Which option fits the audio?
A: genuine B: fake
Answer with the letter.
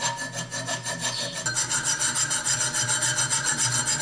A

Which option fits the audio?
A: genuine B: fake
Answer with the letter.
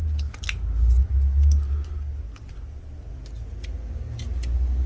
A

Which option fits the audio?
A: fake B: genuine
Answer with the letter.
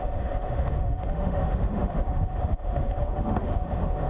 A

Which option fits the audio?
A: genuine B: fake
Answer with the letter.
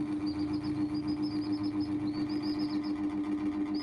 A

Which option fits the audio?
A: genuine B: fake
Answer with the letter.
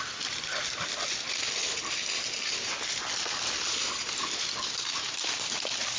A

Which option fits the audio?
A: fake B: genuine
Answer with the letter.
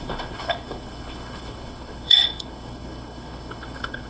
A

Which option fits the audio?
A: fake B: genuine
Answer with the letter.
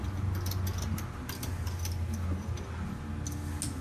B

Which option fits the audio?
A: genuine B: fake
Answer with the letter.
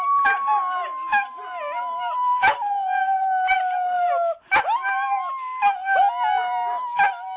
A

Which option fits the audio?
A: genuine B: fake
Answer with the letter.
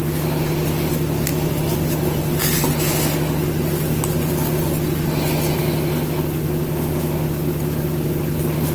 A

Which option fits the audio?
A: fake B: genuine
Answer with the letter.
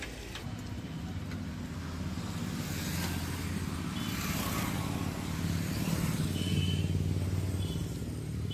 B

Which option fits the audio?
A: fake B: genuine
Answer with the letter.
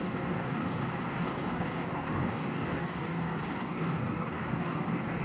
A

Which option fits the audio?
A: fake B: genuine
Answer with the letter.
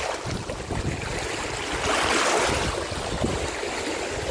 B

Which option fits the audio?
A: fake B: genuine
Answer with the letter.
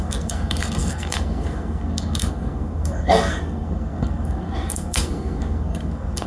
A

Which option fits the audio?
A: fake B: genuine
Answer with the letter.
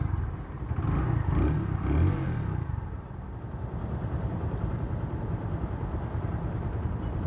B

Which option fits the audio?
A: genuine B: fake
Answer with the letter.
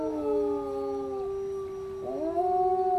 A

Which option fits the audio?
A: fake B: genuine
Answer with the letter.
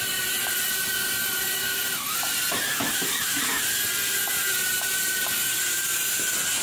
A